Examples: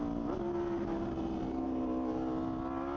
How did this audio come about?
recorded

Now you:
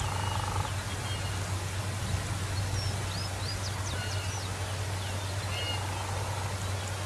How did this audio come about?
recorded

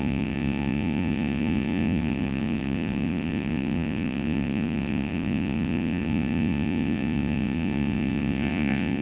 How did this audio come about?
remade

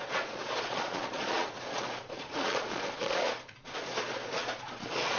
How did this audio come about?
remade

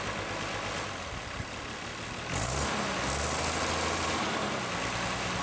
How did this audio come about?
recorded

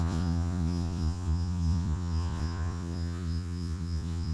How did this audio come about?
remade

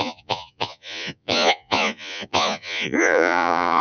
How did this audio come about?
remade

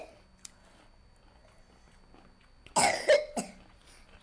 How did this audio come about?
recorded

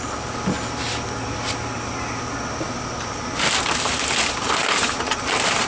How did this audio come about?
recorded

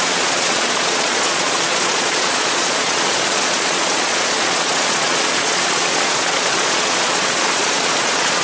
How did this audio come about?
remade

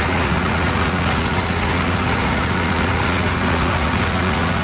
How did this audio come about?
remade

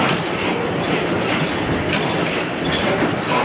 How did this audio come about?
recorded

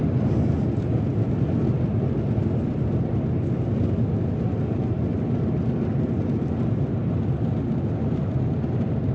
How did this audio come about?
recorded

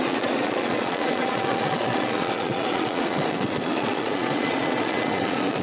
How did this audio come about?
remade